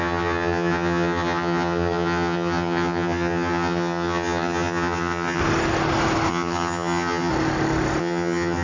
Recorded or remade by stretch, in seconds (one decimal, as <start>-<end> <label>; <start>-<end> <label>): 0.0-5.4 remade; 5.4-6.3 recorded; 6.3-7.3 remade; 7.3-8.0 recorded; 8.0-8.6 remade